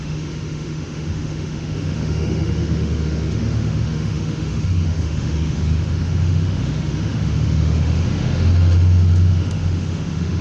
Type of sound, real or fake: fake